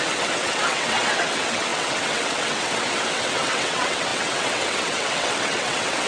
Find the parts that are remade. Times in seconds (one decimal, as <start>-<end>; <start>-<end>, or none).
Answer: 0.0-6.1